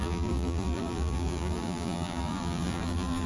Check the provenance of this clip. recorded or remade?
remade